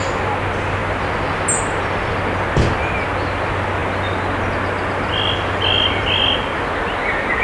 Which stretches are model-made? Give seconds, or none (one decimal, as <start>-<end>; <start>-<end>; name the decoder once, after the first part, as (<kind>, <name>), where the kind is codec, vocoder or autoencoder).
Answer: none